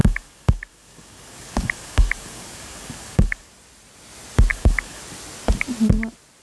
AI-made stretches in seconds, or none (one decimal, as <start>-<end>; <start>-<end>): 0.0-3.5; 4.5-5.0